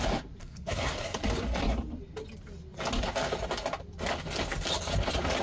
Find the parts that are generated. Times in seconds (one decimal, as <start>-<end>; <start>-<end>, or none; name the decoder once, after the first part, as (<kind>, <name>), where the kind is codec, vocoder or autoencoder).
0.4-1.2 (codec, SNAC)